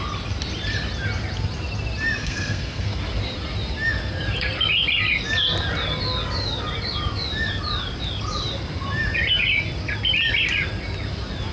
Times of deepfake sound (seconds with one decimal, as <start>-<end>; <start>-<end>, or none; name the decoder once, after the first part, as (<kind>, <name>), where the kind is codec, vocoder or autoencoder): 2.2-3.0 (codec, SNAC)